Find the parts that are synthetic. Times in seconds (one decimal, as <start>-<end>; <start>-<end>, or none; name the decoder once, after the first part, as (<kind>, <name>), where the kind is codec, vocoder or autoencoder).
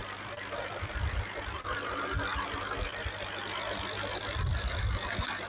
none